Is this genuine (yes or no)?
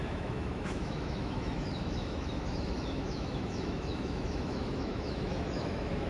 no